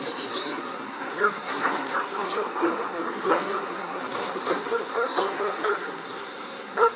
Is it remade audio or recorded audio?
remade